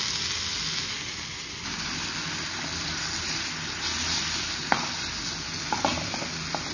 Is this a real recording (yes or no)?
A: yes